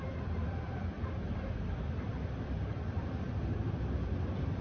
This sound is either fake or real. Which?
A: fake